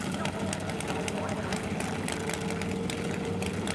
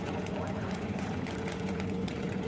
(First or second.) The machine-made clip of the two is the second